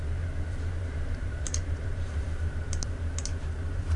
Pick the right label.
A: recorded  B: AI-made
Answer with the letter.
B